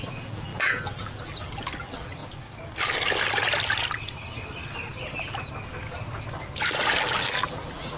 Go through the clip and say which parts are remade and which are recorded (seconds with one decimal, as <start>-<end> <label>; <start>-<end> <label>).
0.0-2.2 remade; 2.2-6.8 recorded; 6.8-8.0 remade